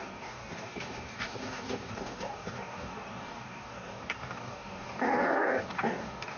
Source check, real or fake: fake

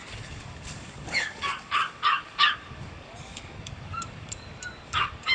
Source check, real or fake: fake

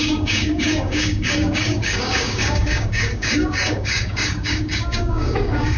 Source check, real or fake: fake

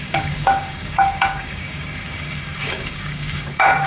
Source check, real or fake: fake